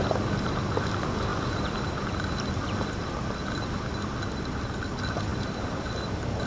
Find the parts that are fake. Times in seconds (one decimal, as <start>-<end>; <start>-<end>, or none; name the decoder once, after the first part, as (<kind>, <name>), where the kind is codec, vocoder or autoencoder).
none